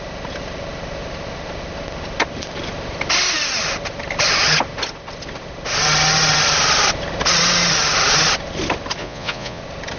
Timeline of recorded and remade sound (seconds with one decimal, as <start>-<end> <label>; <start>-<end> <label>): 0.0-9.0 recorded; 9.0-9.6 remade; 9.6-10.0 recorded